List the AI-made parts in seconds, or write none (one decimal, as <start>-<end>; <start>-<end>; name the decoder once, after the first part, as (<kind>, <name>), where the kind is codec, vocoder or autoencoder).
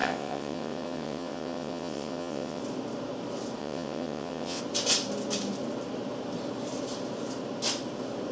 0.0-2.6 (vocoder, WaveNeXt); 3.6-4.6